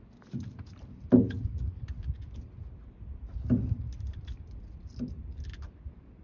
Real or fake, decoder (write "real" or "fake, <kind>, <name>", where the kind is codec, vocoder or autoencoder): real